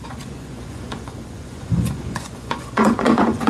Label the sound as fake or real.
fake